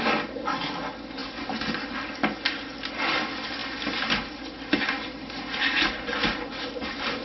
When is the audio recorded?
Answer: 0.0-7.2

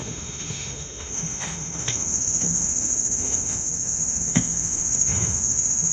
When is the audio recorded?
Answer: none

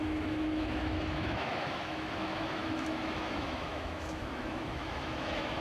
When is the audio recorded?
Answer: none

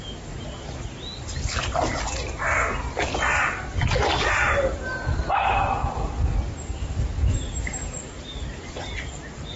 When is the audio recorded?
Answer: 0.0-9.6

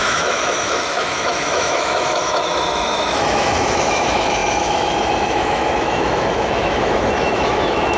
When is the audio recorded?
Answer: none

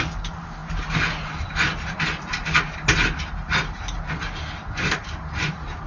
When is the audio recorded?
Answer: 0.0-5.9

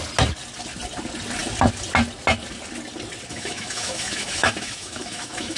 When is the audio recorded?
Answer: 0.0-3.3

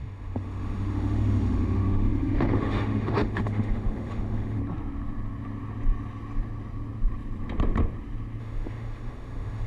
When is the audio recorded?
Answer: 4.6-8.4